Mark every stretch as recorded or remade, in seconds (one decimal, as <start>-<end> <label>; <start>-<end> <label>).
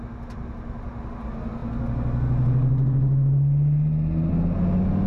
0.0-5.1 recorded